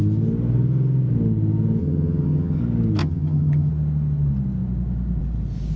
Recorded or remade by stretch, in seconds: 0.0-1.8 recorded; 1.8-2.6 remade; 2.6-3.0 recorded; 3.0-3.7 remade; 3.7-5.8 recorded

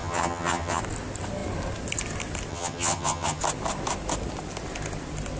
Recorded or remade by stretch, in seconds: 0.0-0.8 remade; 0.8-2.5 recorded; 2.5-3.4 remade; 3.4-5.4 recorded

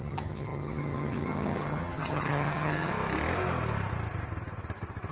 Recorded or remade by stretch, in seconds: 0.0-2.9 remade; 2.9-5.1 recorded

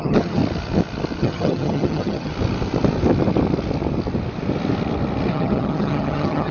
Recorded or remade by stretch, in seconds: 0.0-0.4 remade; 0.4-1.2 recorded; 1.2-2.3 remade; 2.3-5.3 recorded; 5.3-6.5 remade

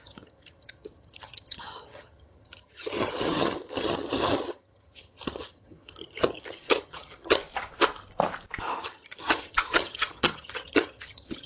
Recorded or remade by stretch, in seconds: 0.0-7.4 remade; 7.4-8.8 recorded; 8.8-11.5 remade

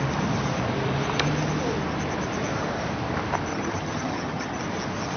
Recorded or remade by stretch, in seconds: 0.0-3.5 recorded; 3.5-4.6 remade; 4.6-5.2 recorded

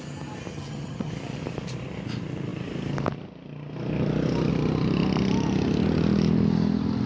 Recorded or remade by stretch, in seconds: 0.0-0.5 recorded; 0.5-1.1 remade; 1.1-7.1 recorded

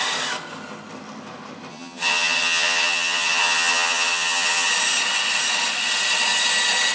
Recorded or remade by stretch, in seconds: 0.0-1.7 recorded; 1.7-4.7 remade; 4.7-6.9 recorded